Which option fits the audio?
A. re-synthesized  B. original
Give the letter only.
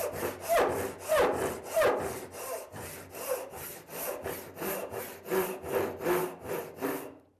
B